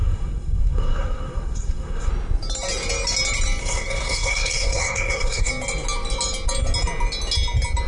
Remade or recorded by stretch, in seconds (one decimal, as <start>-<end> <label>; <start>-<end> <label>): 0.0-2.1 remade; 2.1-3.6 recorded; 3.6-5.5 remade; 5.5-7.9 recorded